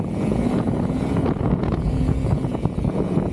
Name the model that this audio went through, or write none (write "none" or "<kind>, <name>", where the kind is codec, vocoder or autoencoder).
vocoder, Vocos